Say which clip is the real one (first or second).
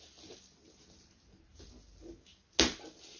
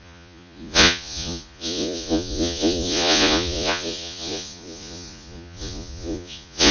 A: first